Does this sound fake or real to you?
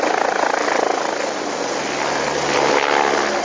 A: real